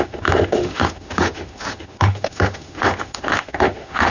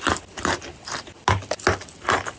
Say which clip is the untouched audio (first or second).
second